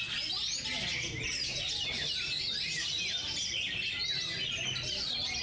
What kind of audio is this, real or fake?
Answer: real